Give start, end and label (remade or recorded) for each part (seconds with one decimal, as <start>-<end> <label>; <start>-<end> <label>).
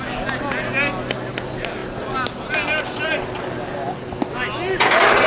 0.0-5.3 recorded